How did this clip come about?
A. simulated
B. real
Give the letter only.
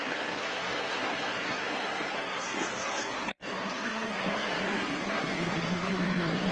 A